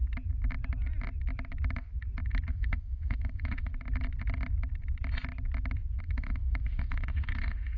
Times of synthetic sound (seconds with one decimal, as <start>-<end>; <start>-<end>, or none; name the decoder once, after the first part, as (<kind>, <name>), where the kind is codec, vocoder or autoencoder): 2.5-3.7 (autoencoder, DAC-VAE); 6.0-7.8

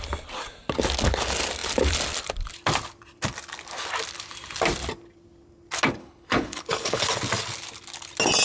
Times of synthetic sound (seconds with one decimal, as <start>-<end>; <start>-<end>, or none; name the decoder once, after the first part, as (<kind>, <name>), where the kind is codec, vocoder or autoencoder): 6.0-7.0 (codec, HILCodec)

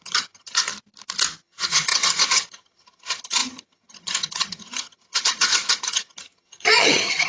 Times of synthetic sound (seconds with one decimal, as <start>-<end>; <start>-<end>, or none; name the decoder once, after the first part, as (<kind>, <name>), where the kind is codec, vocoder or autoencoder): 0.0-0.7 (vocoder, HiFi-GAN); 1.4-7.3

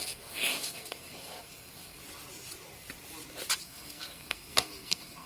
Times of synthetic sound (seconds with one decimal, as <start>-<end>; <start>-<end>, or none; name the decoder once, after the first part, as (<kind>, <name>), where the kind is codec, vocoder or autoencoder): 0.0-2.0 (codec, SNAC); 3.6-5.3

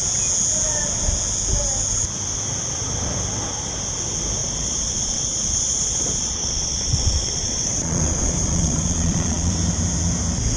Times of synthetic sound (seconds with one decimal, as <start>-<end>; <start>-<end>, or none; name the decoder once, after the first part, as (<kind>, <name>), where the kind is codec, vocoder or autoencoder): 4.4-9.5 (vocoder, Vocos)

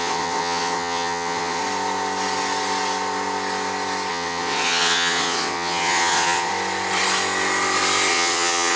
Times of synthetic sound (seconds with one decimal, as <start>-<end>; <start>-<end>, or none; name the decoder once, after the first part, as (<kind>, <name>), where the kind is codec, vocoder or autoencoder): 0.0-1.6 (vocoder, WaveNeXt); 4.1-6.5; 8.1-8.8